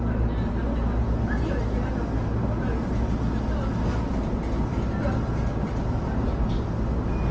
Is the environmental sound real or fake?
real